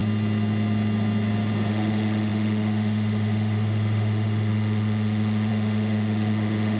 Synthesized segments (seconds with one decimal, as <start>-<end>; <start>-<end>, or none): 1.7-6.8